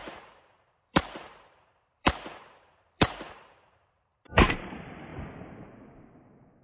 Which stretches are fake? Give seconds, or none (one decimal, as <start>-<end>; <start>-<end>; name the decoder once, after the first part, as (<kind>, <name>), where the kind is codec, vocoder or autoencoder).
0.0-5.1 (vocoder, BigVGAN v2)